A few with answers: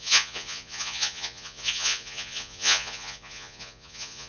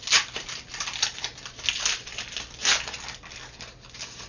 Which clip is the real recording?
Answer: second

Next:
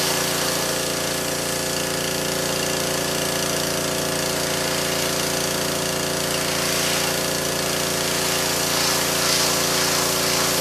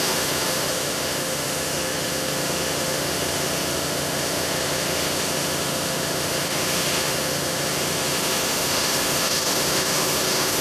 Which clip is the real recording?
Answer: first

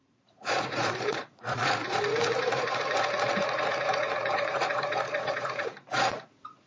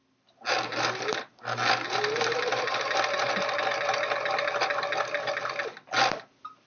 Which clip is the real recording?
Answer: second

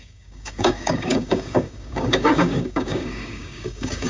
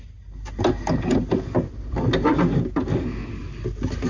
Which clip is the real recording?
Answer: second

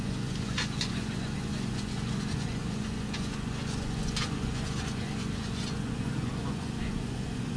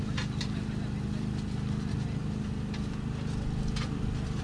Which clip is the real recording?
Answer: second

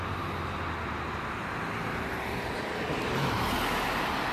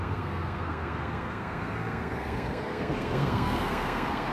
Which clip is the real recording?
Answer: first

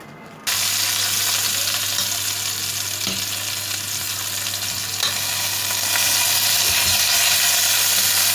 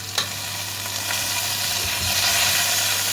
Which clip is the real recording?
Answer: first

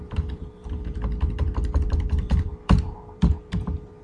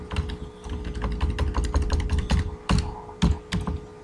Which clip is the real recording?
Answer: second